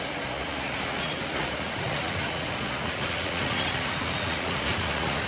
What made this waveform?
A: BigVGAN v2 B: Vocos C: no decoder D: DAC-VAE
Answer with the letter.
B